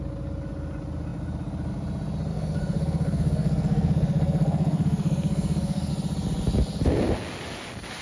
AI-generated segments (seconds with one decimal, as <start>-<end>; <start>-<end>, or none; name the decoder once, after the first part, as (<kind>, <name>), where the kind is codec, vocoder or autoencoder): 2.3-5.9 (codec, SNAC)